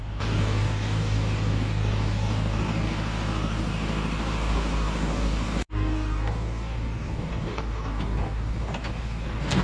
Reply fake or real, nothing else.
fake